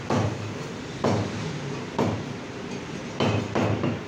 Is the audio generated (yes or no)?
no